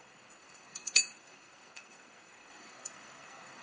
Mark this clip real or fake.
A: fake